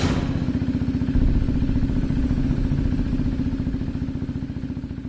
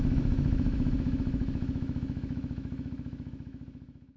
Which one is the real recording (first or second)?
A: first